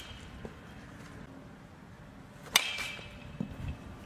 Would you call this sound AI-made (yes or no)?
no